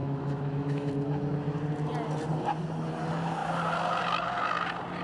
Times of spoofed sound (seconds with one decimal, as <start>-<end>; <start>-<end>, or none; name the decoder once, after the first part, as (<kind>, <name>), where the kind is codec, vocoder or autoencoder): 0.0-0.9 (autoencoder, DAC-VAE)